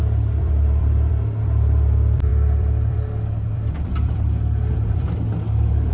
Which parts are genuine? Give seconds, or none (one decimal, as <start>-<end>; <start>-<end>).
none